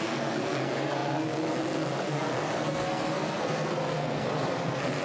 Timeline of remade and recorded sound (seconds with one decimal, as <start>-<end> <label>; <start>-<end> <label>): 0.0-5.0 remade